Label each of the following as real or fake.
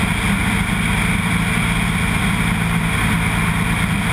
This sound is real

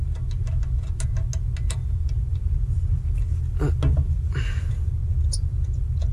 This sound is real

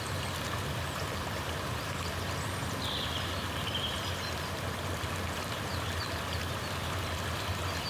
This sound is real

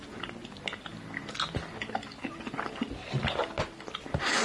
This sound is real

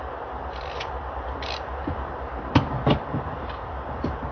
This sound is fake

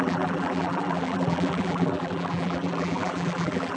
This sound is fake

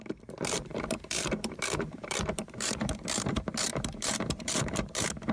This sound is fake